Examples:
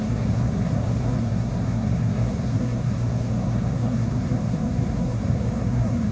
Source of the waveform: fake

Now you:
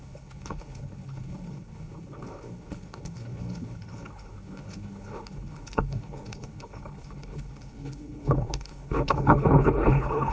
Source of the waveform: fake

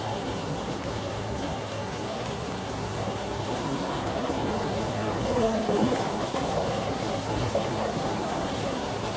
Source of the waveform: fake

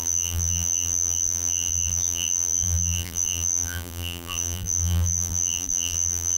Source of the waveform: fake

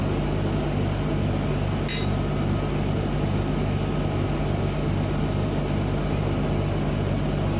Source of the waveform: real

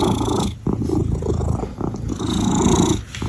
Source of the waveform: real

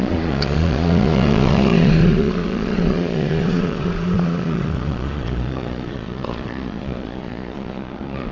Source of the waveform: fake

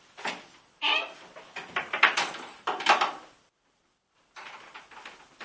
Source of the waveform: fake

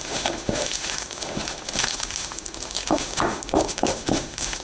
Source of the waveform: fake